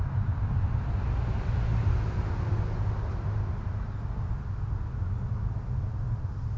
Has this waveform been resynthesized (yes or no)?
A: no